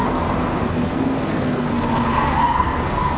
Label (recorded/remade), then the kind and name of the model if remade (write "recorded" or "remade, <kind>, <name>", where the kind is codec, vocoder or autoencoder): remade, codec, SNAC